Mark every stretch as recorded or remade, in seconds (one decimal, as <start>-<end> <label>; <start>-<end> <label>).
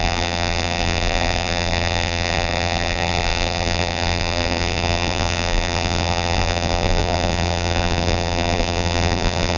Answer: 0.0-9.6 remade